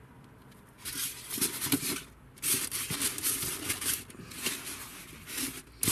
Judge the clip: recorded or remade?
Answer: recorded